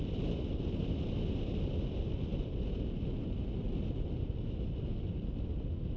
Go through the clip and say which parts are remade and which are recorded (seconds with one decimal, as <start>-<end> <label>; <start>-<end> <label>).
0.0-6.0 recorded